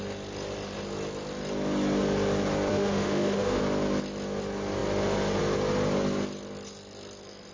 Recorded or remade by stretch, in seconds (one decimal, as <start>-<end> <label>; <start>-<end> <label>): 0.0-2.7 recorded; 2.7-3.6 remade; 3.6-7.5 recorded